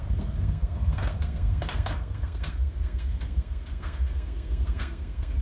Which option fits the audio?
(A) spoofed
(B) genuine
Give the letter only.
A